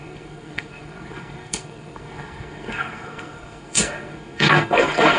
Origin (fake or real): fake